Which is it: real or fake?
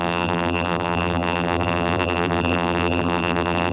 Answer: fake